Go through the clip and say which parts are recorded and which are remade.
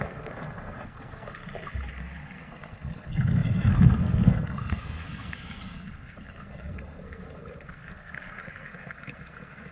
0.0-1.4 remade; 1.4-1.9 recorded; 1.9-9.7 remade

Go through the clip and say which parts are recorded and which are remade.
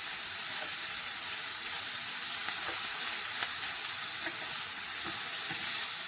0.0-6.1 recorded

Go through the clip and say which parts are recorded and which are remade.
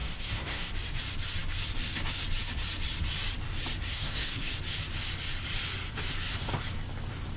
0.0-0.7 remade; 0.7-3.9 recorded; 3.9-4.5 remade; 4.5-7.4 recorded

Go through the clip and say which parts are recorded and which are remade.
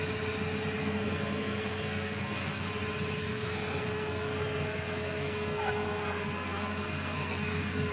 0.0-0.8 recorded; 0.8-2.7 remade; 2.7-3.2 recorded; 3.2-7.9 remade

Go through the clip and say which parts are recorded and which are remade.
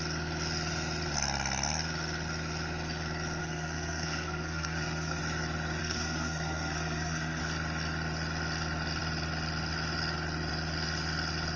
0.0-3.4 recorded; 3.4-5.2 remade; 5.2-5.8 recorded; 5.8-7.4 remade; 7.4-11.6 recorded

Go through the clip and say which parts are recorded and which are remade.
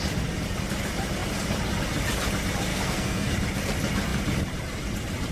0.0-2.7 recorded; 2.7-3.3 remade; 3.3-5.3 recorded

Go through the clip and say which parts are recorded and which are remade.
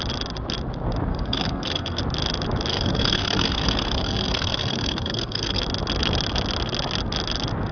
0.0-1.1 recorded; 1.1-2.0 remade; 2.0-2.7 recorded; 2.7-5.6 remade; 5.6-7.7 recorded